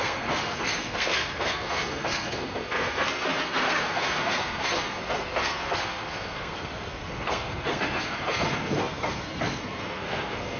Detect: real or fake fake